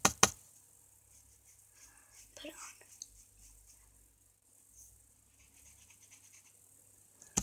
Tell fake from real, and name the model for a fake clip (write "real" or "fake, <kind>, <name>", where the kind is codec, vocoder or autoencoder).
real